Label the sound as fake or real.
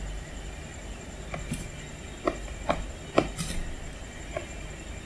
real